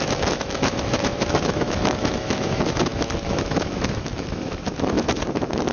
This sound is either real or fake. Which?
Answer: fake